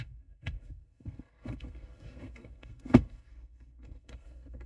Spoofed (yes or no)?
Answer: yes